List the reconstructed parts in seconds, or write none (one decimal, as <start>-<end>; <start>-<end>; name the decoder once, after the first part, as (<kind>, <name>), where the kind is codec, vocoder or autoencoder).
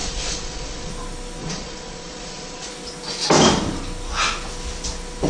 0.0-0.9 (vocoder, Vocos); 1.4-2.7